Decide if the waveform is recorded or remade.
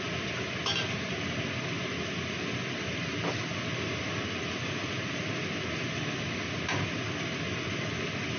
recorded